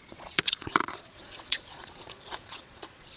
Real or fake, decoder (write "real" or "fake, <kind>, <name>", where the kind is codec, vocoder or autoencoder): fake, vocoder, Vocos